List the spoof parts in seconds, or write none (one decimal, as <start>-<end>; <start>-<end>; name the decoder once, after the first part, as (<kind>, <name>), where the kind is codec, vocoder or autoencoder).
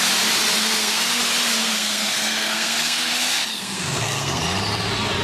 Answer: 0.6-1.2 (codec, SNAC); 1.6-3.1; 3.5-4.4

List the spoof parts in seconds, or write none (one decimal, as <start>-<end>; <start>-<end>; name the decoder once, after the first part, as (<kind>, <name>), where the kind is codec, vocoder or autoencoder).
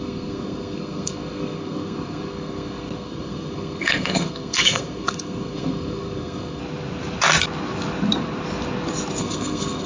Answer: 0.0-6.6 (codec, SNAC); 9.2-9.9